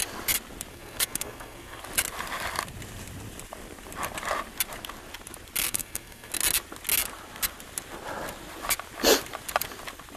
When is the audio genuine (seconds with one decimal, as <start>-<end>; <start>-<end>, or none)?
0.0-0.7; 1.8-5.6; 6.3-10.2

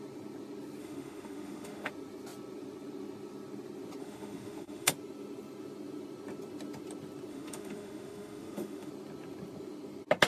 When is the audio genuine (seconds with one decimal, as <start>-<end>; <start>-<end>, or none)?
0.0-0.8; 1.9-4.0; 4.9-7.3; 8.9-10.3

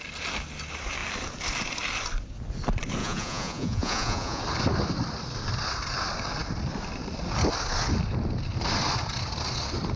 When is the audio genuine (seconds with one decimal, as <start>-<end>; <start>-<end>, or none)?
0.0-3.0; 4.4-10.0